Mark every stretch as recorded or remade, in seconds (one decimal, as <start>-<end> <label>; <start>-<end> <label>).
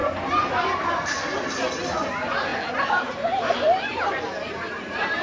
0.0-5.2 recorded